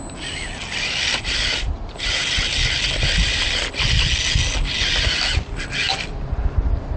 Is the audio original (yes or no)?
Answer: yes